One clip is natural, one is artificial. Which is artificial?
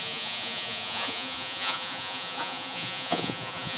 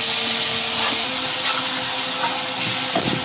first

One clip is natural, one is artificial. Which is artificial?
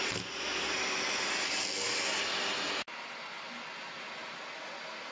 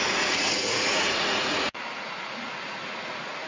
second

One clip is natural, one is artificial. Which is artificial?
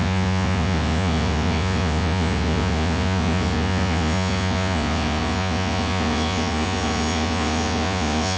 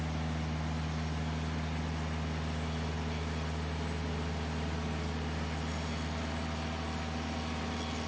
first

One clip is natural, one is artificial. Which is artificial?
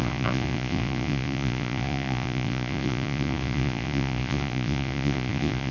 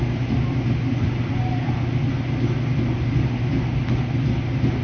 first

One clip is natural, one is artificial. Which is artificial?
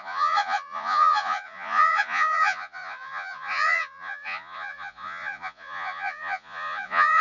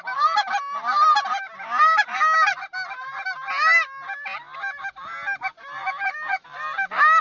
first